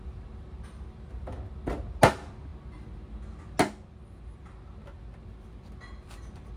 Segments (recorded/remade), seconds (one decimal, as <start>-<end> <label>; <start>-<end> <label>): 0.0-6.6 recorded